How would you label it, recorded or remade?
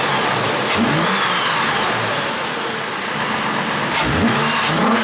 recorded